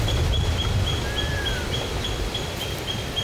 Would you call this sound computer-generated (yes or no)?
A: yes